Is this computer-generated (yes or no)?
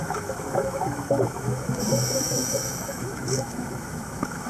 yes